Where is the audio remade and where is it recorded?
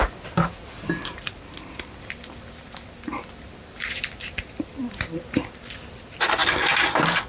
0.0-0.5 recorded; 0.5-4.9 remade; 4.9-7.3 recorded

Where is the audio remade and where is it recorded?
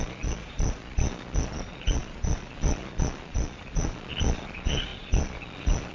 0.0-5.9 remade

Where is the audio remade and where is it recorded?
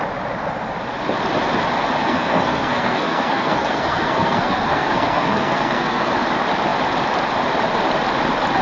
0.0-2.0 recorded; 2.0-6.1 remade; 6.1-8.6 recorded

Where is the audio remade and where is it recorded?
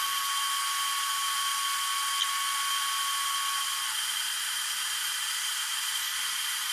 0.0-6.7 recorded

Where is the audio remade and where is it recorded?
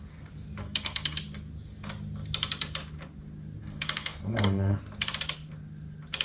0.0-0.6 recorded; 0.6-1.2 remade; 1.2-3.6 recorded; 3.6-4.8 remade; 4.8-6.2 recorded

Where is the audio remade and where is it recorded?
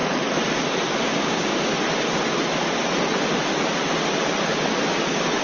0.0-1.0 recorded; 1.0-1.7 remade; 1.7-4.9 recorded; 4.9-5.4 remade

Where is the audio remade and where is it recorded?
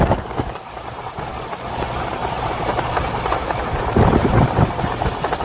0.0-5.4 remade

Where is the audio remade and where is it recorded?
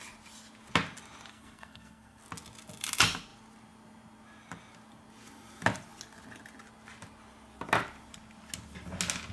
0.0-1.3 recorded; 1.3-2.2 remade; 2.2-9.3 recorded